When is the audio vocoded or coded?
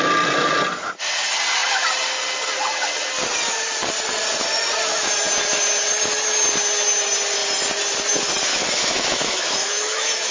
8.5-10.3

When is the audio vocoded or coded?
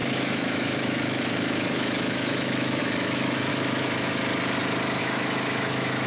0.0-3.5; 5.0-6.1